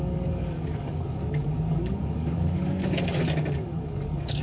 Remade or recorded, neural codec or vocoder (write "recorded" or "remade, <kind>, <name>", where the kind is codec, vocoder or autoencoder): remade, codec, DAC